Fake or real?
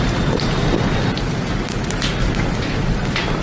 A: real